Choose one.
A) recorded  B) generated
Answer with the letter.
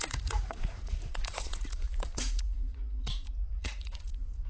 B